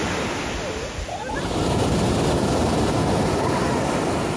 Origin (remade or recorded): recorded